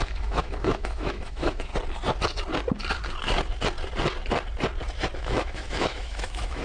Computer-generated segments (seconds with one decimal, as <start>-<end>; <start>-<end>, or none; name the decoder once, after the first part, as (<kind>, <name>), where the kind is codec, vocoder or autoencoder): 0.0-1.7 (autoencoder, DAC-VAE); 5.2-6.6